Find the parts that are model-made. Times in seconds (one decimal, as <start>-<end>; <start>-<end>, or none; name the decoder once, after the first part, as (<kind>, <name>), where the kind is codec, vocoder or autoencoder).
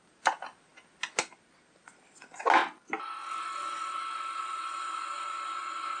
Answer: none